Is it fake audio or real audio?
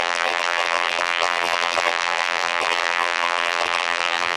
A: fake